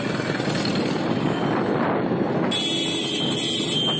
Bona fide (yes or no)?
yes